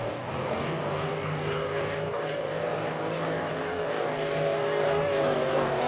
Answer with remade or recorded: remade